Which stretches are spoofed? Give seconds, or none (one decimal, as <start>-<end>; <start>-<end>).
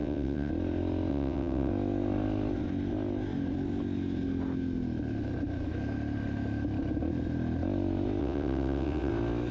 0.0-0.5; 1.1-1.7; 8.2-9.1